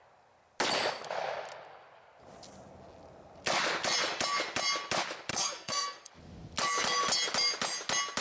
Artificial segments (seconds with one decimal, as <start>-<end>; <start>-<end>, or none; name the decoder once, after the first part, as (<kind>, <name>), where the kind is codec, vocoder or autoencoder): 5.3-6.1 (codec, SNAC)